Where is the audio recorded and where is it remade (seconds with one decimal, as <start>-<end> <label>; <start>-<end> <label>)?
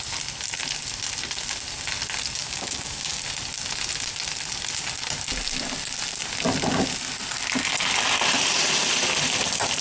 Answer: 0.0-2.4 recorded; 2.4-3.2 remade; 3.2-9.8 recorded